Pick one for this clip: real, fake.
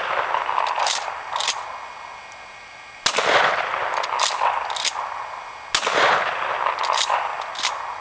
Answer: real